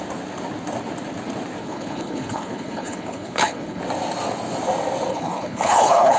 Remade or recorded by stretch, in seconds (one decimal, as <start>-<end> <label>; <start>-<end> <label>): 0.0-1.6 recorded; 1.6-3.8 remade; 3.8-5.1 recorded; 5.1-6.2 remade